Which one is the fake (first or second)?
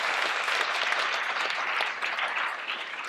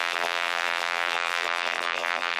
second